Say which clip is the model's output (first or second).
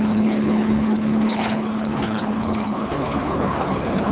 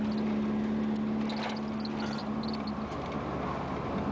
first